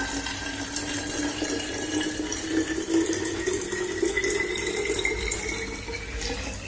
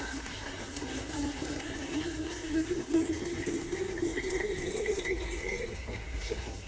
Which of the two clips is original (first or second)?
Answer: first